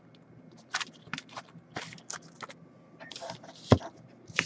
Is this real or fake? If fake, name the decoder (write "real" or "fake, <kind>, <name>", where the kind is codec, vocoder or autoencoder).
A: real